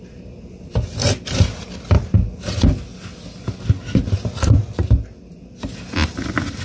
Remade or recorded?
recorded